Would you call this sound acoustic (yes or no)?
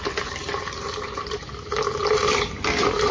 no